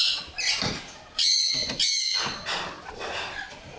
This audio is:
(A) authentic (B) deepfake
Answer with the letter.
A